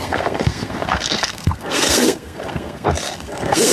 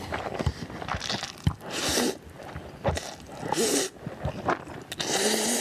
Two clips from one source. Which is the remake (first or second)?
first